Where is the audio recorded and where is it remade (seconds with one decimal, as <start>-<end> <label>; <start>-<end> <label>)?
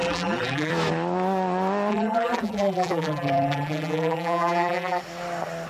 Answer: 0.0-0.7 remade; 0.7-1.9 recorded; 1.9-5.0 remade; 5.0-5.7 recorded